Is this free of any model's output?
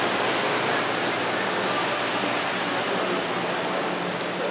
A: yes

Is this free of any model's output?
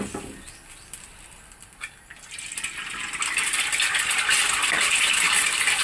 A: yes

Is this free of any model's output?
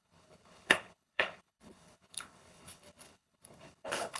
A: no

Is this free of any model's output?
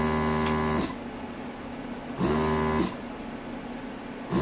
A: yes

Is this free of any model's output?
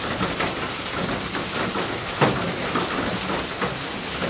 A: yes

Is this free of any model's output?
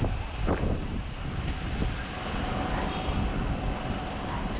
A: yes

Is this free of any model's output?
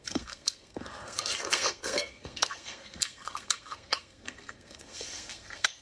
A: no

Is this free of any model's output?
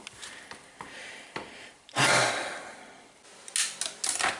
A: yes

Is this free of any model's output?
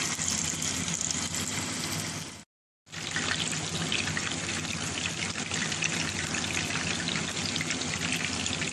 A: yes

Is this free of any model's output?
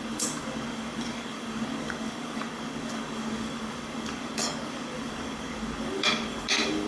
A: no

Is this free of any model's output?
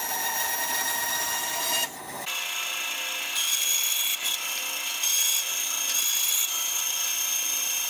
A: yes